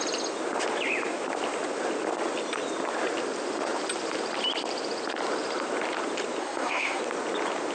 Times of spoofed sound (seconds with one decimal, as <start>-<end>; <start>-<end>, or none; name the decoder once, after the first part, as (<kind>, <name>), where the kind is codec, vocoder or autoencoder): 6.4-7.0 (codec, SNAC)